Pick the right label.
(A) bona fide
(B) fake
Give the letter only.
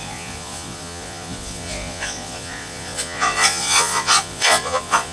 B